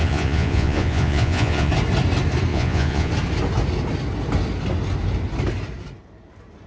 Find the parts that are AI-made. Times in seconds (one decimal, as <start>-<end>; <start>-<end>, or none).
0.0-1.7; 2.5-3.1